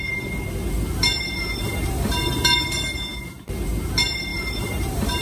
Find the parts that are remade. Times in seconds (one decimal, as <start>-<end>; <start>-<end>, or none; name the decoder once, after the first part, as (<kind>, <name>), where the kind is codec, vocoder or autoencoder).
4.3-5.2 (vocoder, BigVGAN v2)